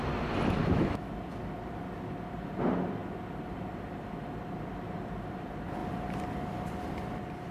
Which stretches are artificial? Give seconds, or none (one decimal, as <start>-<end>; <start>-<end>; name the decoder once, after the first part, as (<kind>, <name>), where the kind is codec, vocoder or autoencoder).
0.6-1.1 (autoencoder, DAC-VAE)